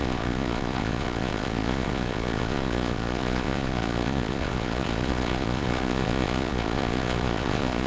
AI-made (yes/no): yes